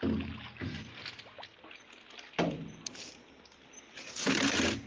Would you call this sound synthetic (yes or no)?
no